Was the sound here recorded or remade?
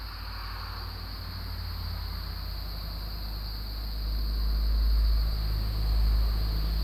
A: recorded